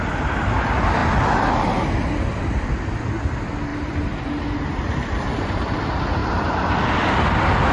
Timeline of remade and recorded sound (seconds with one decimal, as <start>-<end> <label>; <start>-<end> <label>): 0.0-6.2 recorded; 6.2-6.7 remade; 6.7-7.7 recorded